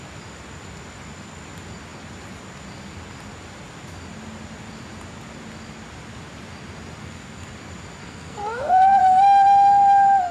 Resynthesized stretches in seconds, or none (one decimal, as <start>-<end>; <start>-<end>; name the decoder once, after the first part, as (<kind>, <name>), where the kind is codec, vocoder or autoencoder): 7.0-7.5 (codec, SNAC); 8.0-9.0